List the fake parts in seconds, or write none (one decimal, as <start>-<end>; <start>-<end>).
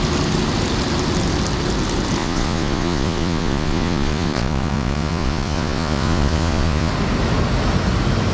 2.2-6.9